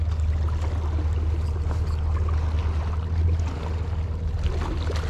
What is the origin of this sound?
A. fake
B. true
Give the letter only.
B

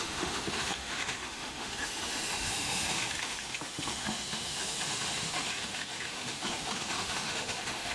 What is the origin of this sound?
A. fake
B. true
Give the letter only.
A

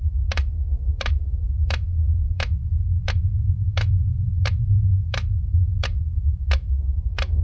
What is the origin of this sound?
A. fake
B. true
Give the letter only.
A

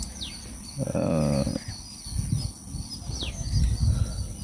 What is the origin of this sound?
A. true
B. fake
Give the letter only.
A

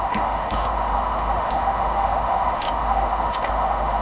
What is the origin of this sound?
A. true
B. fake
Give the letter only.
B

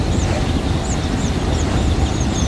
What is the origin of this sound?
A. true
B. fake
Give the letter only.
A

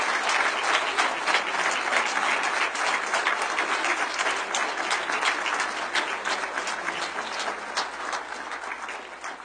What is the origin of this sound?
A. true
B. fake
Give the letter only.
A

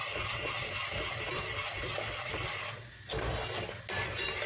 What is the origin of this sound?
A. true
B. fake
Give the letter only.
A